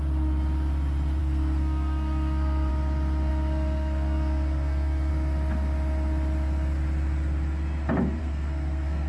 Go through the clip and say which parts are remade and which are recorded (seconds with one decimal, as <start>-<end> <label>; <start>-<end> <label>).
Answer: 0.0-1.2 recorded; 1.2-2.7 remade; 2.7-3.3 recorded; 3.3-5.1 remade; 5.1-8.2 recorded; 8.2-9.1 remade